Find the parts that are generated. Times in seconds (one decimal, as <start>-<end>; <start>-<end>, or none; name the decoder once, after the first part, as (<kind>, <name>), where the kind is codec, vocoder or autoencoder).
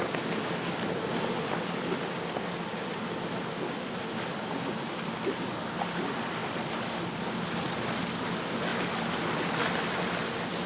none